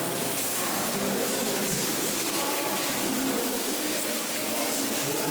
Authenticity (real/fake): fake